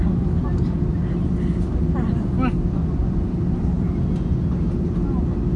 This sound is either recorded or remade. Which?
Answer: recorded